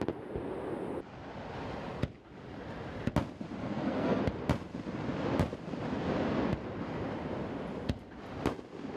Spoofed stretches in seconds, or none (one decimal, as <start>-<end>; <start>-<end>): 3.6-4.2